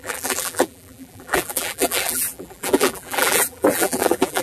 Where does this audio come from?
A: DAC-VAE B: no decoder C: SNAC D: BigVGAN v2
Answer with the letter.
D